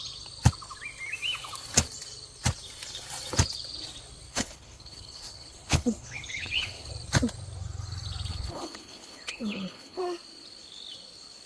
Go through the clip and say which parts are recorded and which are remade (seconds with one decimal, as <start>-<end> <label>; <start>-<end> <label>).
0.0-4.3 recorded; 4.3-6.9 remade; 6.9-8.3 recorded; 8.3-10.0 remade; 10.0-11.5 recorded